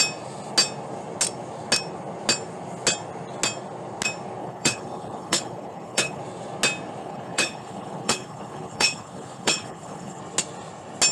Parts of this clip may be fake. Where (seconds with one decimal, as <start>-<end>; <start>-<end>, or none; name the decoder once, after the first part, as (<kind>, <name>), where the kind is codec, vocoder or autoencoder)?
4.4-6.2 (codec, HILCodec); 7.0-10.2